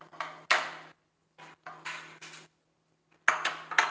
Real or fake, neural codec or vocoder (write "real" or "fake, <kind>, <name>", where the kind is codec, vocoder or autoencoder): real